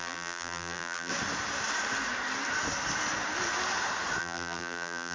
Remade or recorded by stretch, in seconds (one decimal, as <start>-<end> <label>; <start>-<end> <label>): 0.0-1.1 remade; 1.1-4.2 recorded; 4.2-5.1 remade